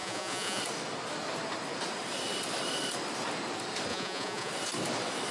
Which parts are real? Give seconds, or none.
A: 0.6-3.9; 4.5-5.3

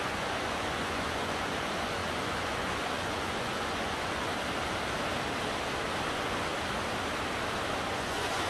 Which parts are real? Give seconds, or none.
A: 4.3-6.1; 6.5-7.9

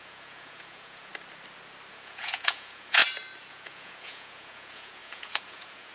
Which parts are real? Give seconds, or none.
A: 1.1-1.9; 3.0-3.5